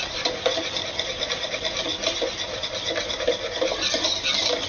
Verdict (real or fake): real